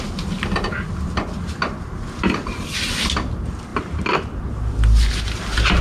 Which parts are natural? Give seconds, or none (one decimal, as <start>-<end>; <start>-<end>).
0.0-5.8